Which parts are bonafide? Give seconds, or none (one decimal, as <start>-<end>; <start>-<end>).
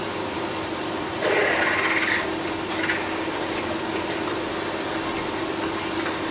1.4-6.3